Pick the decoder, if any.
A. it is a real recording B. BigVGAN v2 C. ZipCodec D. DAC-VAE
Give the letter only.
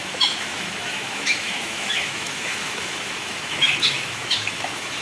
D